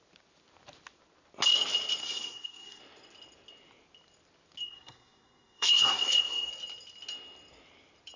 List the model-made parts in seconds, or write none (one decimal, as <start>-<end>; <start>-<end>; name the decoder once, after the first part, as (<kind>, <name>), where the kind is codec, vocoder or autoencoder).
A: 2.0-2.8 (codec, SNAC); 4.6-6.5